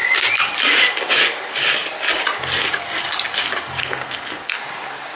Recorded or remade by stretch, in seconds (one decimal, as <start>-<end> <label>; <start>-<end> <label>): 0.0-3.8 recorded; 3.8-4.6 remade; 4.6-5.2 recorded